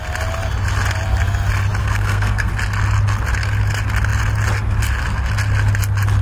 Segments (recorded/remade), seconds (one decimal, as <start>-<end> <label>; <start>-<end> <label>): 0.0-1.8 recorded; 1.8-2.5 remade; 2.5-6.2 recorded